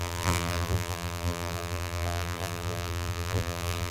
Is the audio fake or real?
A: fake